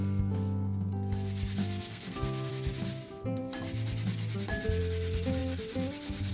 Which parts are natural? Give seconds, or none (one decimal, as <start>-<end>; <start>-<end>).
0.0-1.6; 2.5-6.3